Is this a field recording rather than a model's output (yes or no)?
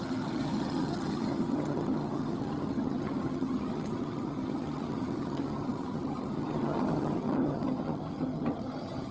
no